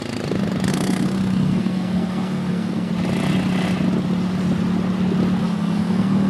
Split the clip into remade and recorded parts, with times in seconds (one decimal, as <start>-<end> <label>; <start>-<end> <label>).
0.0-0.7 recorded; 0.7-2.9 remade; 2.9-5.4 recorded; 5.4-6.3 remade